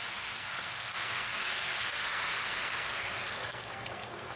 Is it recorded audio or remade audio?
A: remade